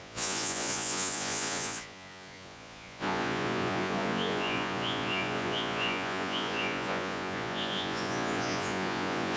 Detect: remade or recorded remade